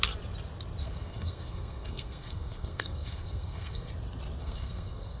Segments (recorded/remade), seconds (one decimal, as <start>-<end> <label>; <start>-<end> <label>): 0.0-0.8 recorded; 0.8-3.9 remade; 3.9-4.4 recorded; 4.4-5.2 remade